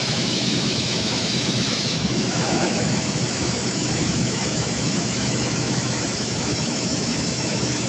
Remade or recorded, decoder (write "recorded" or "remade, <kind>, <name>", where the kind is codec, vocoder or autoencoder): remade, autoencoder, DAC-VAE